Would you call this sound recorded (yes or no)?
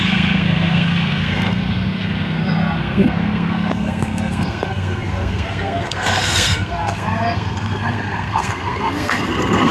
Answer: no